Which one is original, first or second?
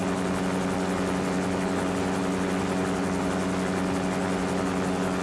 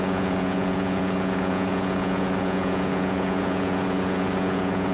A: first